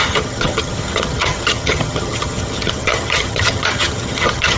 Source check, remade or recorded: remade